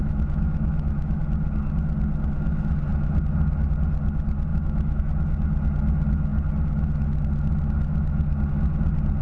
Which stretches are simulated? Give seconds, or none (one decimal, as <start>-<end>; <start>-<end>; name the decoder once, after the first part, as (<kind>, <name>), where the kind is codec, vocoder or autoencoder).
0.0-1.2 (autoencoder, DAC-VAE); 4.5-5.0